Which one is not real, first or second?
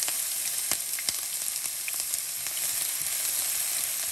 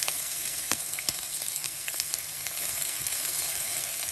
second